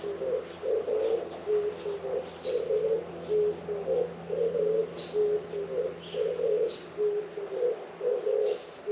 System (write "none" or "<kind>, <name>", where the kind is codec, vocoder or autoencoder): none